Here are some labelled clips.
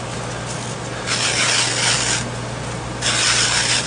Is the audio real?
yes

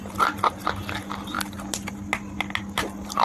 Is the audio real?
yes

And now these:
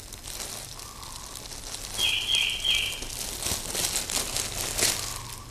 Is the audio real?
yes